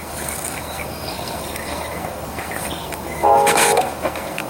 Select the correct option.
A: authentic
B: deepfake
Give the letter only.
B